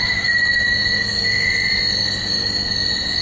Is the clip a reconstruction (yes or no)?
no